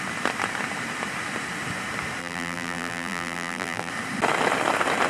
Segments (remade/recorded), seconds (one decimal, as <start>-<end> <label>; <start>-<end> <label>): 0.0-2.2 recorded; 2.2-3.9 remade; 3.9-5.1 recorded